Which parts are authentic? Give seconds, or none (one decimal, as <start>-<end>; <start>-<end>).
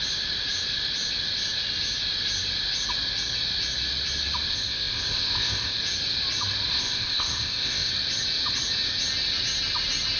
0.0-4.5; 5.8-6.7; 7.9-10.2